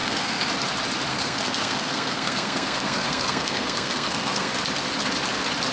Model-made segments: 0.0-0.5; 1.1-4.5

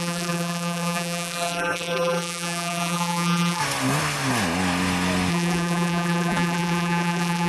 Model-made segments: 0.0-3.6; 5.3-7.5

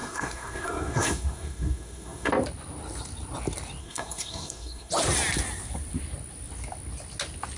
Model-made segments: 0.0-2.3; 3.8-4.9

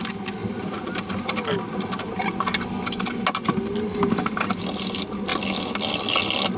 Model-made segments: none

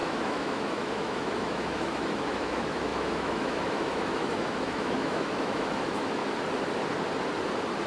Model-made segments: 0.0-6.2

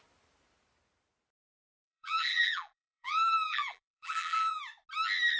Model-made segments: 1.4-4.6